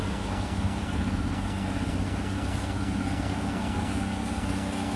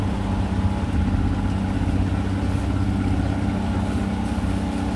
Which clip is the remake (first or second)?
first